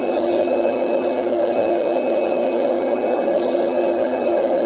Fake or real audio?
fake